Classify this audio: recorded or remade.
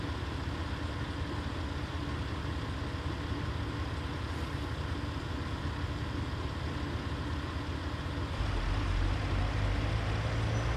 recorded